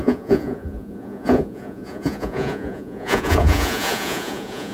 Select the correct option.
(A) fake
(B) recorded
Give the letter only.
A